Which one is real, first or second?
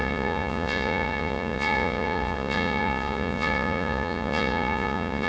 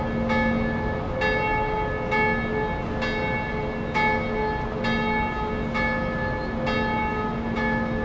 second